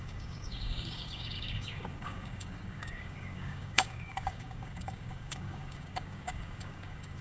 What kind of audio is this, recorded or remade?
remade